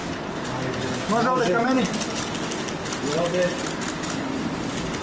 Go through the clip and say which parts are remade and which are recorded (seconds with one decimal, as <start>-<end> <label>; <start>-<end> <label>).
0.0-5.0 recorded